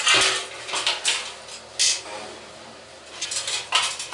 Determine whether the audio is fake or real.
real